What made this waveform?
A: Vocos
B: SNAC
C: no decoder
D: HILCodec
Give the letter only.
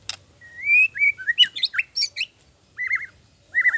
C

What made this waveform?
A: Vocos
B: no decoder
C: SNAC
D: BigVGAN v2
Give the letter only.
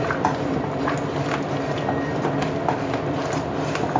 B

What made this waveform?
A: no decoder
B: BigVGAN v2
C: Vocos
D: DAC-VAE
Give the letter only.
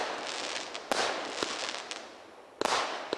A